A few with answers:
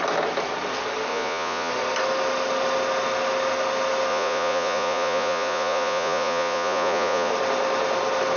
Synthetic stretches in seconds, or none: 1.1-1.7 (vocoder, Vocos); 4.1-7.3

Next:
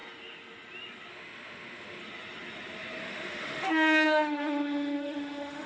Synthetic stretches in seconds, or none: 1.1-2.0 (autoencoder, DAC-VAE); 3.0-5.7

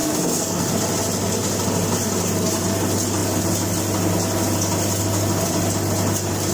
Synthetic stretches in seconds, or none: 0.0-0.7 (codec, SNAC)

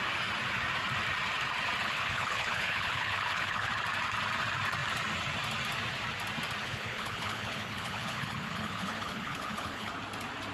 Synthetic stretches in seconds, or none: 1.8-3.7 (codec, HILCodec); 6.6-9.9

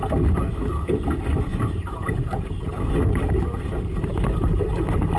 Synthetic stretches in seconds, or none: 1.5-3.3 (vocoder, BigVGAN v2)

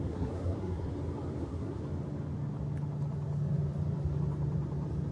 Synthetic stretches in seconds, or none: 0.0-0.9 (codec, SNAC); 1.4-1.8